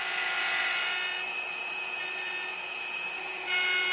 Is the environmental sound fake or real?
fake